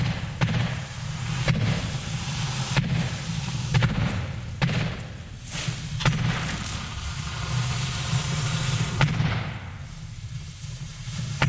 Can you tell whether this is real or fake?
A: fake